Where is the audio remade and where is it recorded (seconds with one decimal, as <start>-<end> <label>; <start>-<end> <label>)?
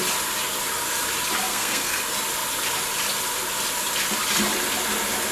0.0-1.5 recorded; 1.5-2.0 remade; 2.0-5.3 recorded